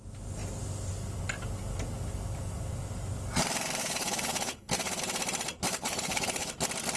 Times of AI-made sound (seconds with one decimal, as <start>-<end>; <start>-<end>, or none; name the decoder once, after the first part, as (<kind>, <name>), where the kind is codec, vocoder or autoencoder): 3.8-5.0 (codec, HILCodec); 5.7-6.5